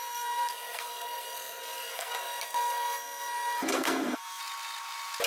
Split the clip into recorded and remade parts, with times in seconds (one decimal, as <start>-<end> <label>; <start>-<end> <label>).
0.0-4.4 remade; 4.4-5.3 recorded